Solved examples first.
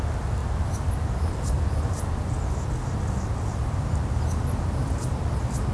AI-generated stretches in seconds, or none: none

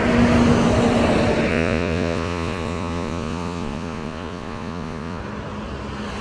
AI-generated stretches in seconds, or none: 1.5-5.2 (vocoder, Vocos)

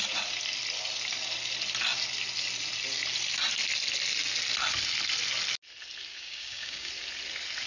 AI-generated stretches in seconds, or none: 6.1-6.9 (codec, DAC)